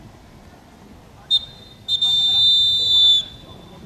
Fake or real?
real